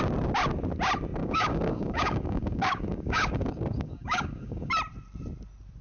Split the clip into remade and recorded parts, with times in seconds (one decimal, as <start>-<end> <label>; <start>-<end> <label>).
0.0-1.2 recorded; 1.2-4.7 remade; 4.7-5.8 recorded

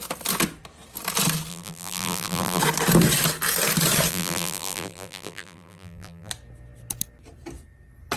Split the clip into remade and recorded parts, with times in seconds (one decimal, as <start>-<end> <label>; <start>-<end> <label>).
0.0-1.5 recorded; 1.5-2.6 remade; 2.6-4.1 recorded; 4.1-6.3 remade; 6.3-8.2 recorded

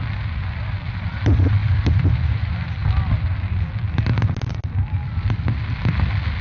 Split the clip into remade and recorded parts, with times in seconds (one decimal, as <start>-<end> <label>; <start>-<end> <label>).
0.0-6.4 recorded

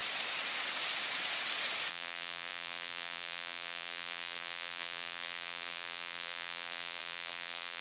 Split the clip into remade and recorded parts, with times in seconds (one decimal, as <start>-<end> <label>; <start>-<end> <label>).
0.0-1.9 recorded; 1.9-7.8 remade